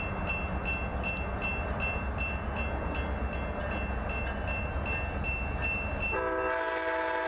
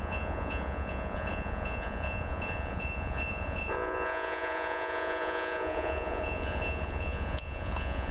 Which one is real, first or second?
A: first